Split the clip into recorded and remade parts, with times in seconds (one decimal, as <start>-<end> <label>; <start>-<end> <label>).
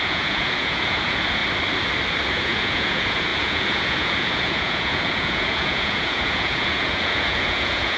0.0-1.4 remade; 1.4-2.4 recorded; 2.4-8.0 remade